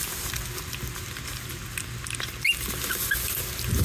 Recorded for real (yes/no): yes